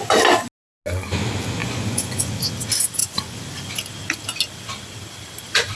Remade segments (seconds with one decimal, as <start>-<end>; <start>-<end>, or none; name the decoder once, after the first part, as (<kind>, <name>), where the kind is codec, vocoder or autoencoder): 1.6-2.3 (vocoder, Vocos); 3.0-3.7